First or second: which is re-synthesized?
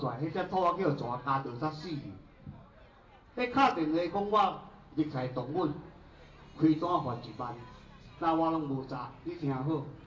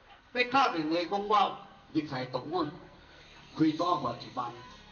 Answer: second